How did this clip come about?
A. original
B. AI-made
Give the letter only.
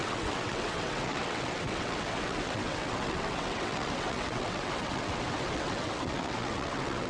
B